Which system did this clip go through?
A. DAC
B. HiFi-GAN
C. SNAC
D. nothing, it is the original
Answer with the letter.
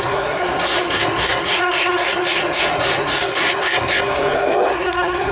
C